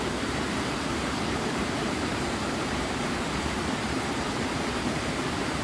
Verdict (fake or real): fake